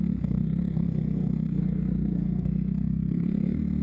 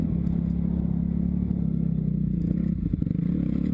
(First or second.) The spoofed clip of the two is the first